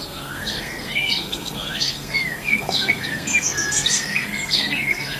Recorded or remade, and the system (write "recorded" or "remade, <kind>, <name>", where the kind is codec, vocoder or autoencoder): remade, codec, SNAC